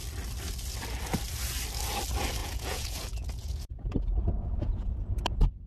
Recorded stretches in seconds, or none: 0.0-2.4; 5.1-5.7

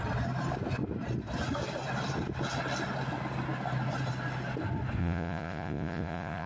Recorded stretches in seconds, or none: 0.0-5.0